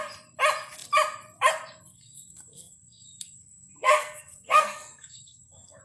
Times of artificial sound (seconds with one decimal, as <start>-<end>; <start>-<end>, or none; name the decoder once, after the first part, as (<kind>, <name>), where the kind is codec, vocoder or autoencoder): 1.9-5.8 (codec, SNAC)